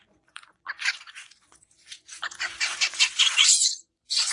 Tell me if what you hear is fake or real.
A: fake